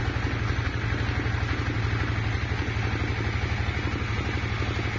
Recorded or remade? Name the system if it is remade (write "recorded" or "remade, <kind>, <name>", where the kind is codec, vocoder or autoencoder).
recorded